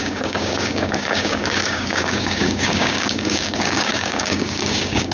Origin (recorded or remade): remade